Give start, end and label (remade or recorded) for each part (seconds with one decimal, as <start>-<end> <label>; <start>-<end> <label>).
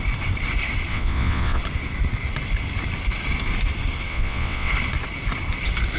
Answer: 0.0-0.9 recorded; 0.9-1.6 remade; 1.6-4.1 recorded; 4.1-4.7 remade; 4.7-6.0 recorded